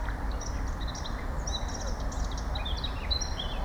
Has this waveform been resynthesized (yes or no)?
no